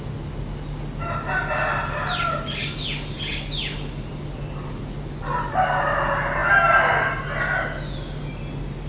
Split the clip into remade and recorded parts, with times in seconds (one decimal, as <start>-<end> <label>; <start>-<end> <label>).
0.0-8.9 recorded